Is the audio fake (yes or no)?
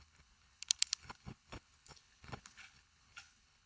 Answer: yes